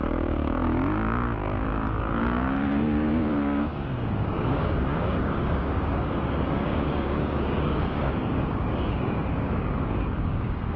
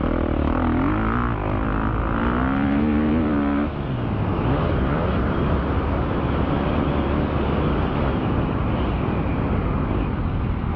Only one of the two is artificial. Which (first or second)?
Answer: first